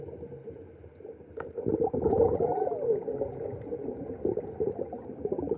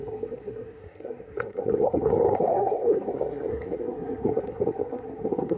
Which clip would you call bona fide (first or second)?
first